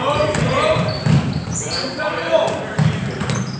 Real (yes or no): no